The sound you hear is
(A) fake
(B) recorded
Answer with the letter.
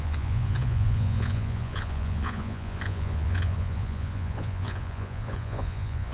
A